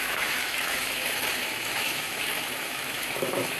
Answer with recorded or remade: remade